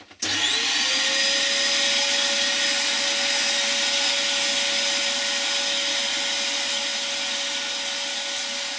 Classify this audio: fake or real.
real